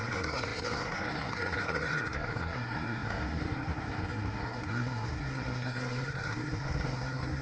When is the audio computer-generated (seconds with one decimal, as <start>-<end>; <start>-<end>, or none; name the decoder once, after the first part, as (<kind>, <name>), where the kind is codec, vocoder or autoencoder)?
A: 0.0-7.4 (codec, SNAC)